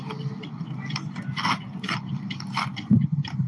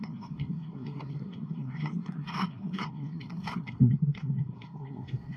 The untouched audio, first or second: first